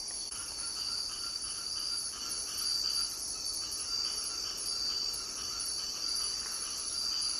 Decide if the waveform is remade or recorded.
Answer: remade